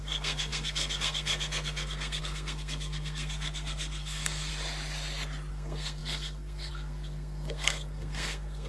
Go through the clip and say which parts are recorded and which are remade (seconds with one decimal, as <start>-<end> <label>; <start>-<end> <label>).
0.0-4.5 remade; 4.5-5.5 recorded; 5.5-8.7 remade